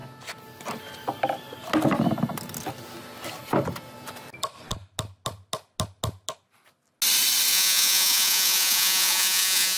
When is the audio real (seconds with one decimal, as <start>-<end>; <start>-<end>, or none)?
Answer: 0.0-7.5